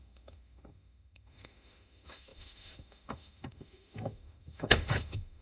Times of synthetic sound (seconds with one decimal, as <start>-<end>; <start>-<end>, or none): 0.0-5.4